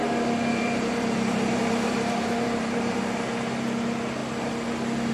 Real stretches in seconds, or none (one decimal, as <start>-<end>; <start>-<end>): 0.0-0.5; 3.0-5.1